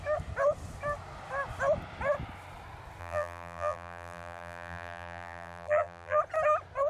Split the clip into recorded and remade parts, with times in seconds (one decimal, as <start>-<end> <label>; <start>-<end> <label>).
0.0-3.0 recorded; 3.0-6.2 remade; 6.2-6.9 recorded